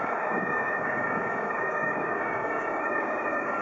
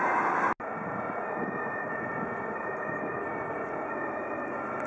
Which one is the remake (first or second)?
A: first